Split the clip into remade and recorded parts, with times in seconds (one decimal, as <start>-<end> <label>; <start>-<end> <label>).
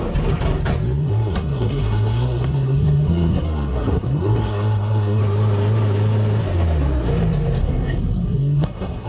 0.0-1.0 recorded; 1.0-5.2 remade; 5.2-7.6 recorded; 7.6-9.1 remade